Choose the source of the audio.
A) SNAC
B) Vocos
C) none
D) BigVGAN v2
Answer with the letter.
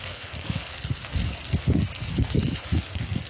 A